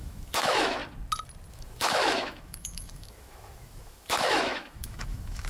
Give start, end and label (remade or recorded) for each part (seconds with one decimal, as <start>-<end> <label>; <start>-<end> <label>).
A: 0.0-0.8 remade; 0.8-1.5 recorded; 1.5-5.5 remade